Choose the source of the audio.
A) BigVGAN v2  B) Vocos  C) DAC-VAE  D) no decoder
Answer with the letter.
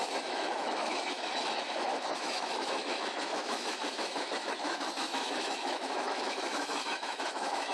C